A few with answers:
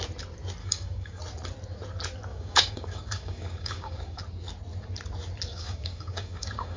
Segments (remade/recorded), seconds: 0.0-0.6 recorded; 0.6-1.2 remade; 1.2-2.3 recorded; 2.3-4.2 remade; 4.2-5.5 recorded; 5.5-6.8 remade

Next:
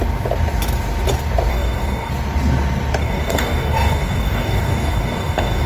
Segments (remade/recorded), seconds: 0.0-1.5 recorded; 1.5-2.1 remade; 2.1-3.0 recorded; 3.0-5.7 remade

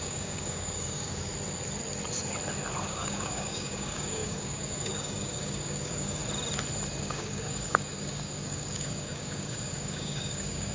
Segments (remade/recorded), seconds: 0.0-1.3 remade; 1.3-2.8 recorded; 2.8-6.2 remade; 6.2-7.0 recorded; 7.0-10.7 remade

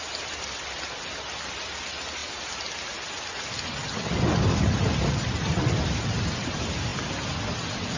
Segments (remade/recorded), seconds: 0.0-8.0 recorded

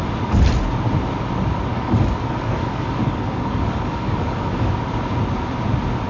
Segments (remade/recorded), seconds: 0.0-1.7 recorded; 1.7-4.7 remade; 4.7-6.1 recorded

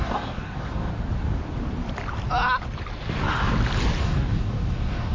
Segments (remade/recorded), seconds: 0.0-0.9 remade; 0.9-4.0 recorded; 4.0-5.1 remade